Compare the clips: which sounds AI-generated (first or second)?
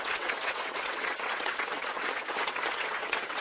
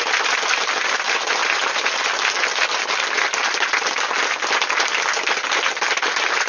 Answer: first